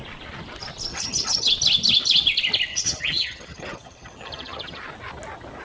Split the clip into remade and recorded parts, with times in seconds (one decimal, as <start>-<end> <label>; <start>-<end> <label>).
0.0-0.9 recorded; 0.9-1.5 remade; 1.5-2.7 recorded; 2.7-4.8 remade; 4.8-5.6 recorded